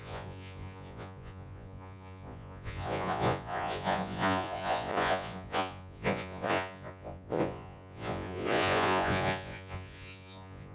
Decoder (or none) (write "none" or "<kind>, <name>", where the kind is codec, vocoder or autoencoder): vocoder, Vocos